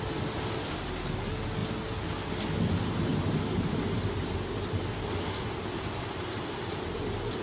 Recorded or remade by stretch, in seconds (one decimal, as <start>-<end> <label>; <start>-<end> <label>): 0.0-7.4 recorded